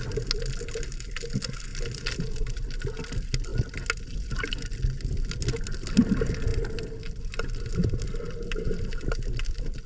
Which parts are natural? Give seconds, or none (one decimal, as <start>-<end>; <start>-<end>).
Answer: 0.0-9.9